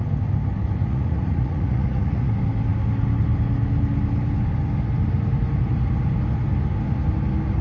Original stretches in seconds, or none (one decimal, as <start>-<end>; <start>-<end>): 0.0-0.8; 2.3-7.6

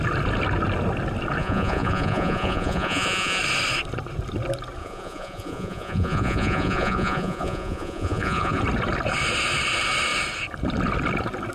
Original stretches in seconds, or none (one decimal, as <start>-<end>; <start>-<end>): 0.0-1.4; 3.4-4.8; 8.6-11.5

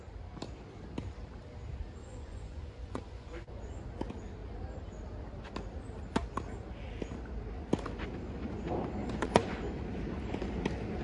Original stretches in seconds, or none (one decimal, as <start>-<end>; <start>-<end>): 0.0-2.0; 3.7-9.0; 9.8-11.0